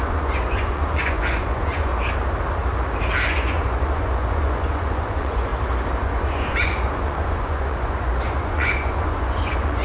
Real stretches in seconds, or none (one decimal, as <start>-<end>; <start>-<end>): 1.9-3.3; 5.5-6.0